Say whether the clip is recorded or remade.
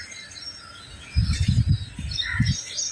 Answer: recorded